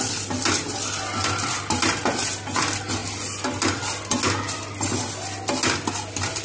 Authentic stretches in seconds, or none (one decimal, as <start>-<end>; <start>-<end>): 0.0-6.4